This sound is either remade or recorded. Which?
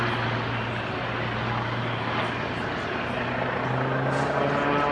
recorded